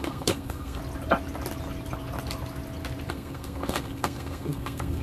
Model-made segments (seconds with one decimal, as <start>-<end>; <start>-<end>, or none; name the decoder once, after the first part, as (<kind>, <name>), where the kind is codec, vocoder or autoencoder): 0.0-0.8 (codec, SNAC); 3.1-5.0